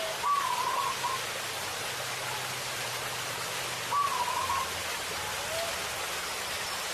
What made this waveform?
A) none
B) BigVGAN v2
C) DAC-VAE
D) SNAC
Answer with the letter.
A